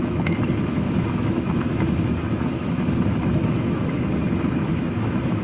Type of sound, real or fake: fake